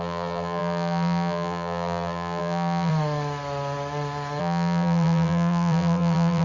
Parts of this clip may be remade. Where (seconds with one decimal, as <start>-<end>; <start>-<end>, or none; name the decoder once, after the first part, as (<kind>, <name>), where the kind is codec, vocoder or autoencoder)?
0.0-2.9 (vocoder, BigVGAN v2); 4.4-6.4